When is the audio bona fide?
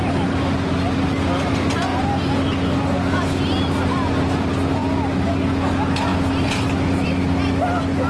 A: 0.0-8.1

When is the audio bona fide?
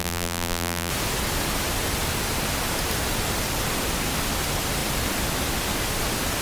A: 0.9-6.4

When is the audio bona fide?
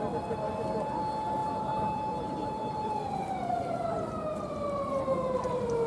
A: 0.0-1.4; 4.9-5.9